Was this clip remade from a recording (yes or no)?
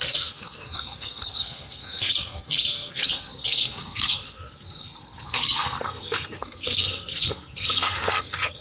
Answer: yes